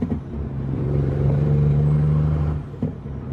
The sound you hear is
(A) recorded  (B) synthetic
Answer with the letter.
B